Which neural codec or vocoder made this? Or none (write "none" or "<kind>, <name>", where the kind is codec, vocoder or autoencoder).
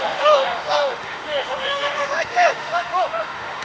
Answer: autoencoder, DAC-VAE